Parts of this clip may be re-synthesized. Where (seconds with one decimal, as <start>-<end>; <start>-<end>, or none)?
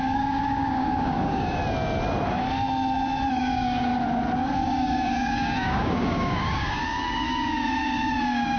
0.0-1.6; 3.3-3.9; 4.6-8.6